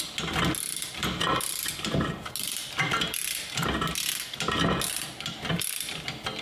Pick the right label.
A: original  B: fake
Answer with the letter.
A